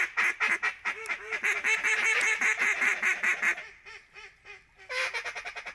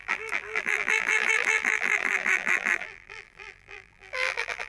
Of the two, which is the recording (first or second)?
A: first